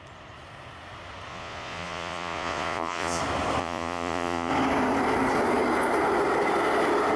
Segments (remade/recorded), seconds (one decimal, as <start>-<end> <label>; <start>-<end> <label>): 0.0-1.3 recorded; 1.3-3.2 remade; 3.2-3.6 recorded; 3.6-4.5 remade; 4.5-7.2 recorded